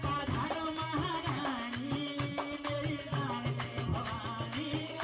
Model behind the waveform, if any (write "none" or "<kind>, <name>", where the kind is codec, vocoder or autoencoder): none